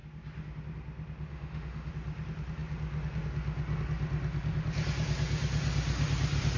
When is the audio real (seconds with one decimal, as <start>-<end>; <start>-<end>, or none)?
0.0-1.3; 1.9-6.6